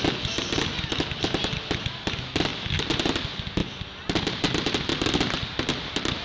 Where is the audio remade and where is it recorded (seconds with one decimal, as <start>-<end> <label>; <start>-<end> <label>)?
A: 0.0-6.2 recorded